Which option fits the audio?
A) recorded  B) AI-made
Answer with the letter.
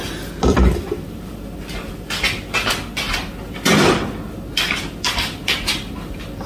A